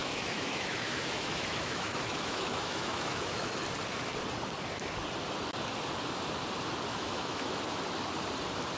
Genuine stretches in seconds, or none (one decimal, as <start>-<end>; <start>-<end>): 3.5-6.9; 7.6-8.8